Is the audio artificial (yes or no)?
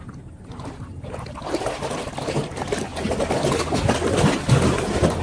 no